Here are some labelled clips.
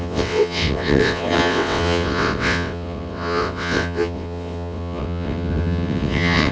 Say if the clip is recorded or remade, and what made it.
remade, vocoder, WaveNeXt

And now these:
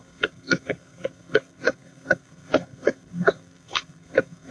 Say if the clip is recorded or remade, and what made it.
remade, codec, SNAC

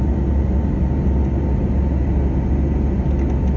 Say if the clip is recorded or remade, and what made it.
recorded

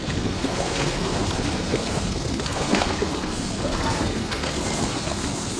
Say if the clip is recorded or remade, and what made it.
remade, codec, SNAC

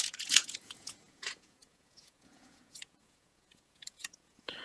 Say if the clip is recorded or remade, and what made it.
remade, vocoder, Vocos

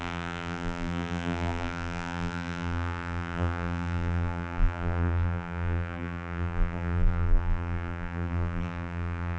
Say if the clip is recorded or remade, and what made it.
remade, vocoder, BigVGAN v2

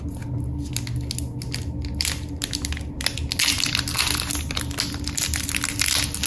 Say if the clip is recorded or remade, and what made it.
recorded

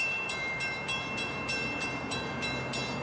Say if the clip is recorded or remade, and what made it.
remade, vocoder, BigVGAN v2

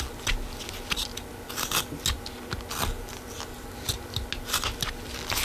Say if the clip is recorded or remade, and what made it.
recorded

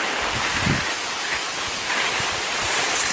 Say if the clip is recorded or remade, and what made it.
recorded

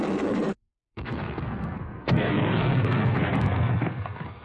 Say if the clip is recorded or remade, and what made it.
remade, codec, SNAC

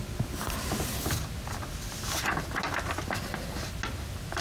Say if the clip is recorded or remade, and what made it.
recorded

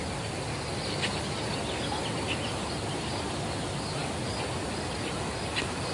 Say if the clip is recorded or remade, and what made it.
recorded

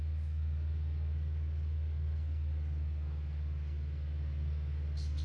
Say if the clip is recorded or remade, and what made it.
remade, codec, SNAC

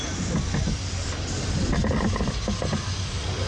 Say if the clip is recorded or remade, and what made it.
recorded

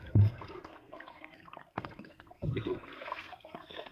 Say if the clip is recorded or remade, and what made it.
remade, codec, SNAC